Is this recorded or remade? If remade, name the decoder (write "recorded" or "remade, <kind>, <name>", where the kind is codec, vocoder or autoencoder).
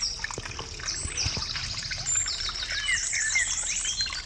recorded